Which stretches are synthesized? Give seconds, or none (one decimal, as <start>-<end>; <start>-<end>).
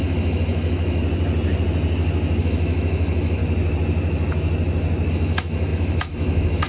0.0-1.0; 2.4-3.4; 5.1-6.7